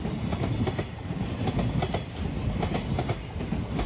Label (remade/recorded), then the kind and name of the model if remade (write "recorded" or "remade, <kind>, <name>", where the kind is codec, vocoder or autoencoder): recorded